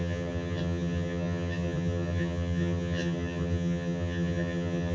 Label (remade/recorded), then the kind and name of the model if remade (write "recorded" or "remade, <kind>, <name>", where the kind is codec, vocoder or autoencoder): remade, vocoder, HiFi-GAN